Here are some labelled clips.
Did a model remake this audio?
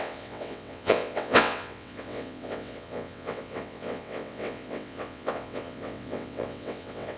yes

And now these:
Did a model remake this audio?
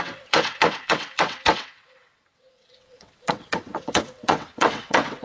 yes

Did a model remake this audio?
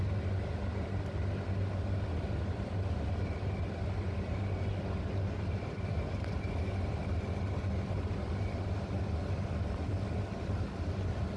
no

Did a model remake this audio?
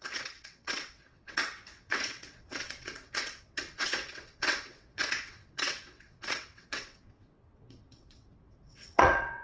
yes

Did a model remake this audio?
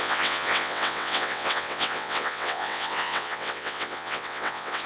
yes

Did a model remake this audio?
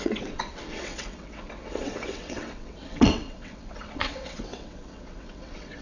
yes